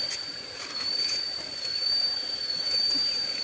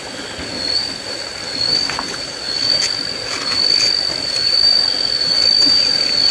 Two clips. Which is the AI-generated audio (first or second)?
first